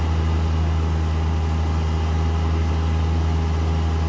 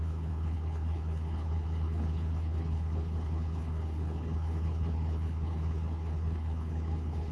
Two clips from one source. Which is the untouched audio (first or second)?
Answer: first